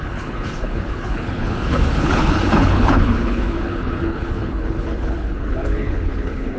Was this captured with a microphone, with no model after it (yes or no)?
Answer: no